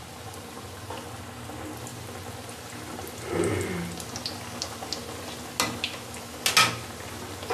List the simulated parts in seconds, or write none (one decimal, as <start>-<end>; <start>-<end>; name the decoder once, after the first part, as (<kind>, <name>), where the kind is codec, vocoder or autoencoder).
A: none